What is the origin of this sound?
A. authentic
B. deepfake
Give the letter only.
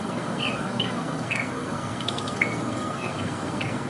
B